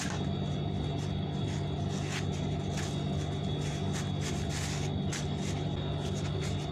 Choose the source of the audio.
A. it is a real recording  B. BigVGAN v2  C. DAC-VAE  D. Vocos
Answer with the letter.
A